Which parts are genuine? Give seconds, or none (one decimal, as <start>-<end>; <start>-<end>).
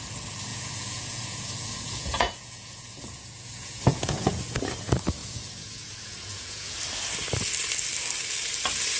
0.0-0.5; 4.6-5.2; 6.8-9.0